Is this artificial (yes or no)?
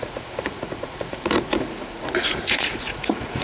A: yes